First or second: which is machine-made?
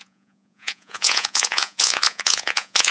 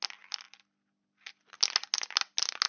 first